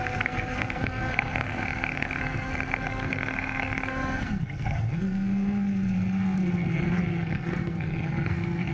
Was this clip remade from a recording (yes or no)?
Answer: yes